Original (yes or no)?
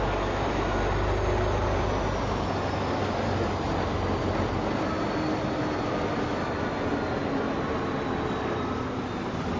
yes